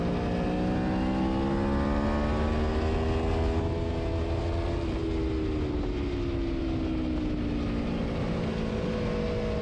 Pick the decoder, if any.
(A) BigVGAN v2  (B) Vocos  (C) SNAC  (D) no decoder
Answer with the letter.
D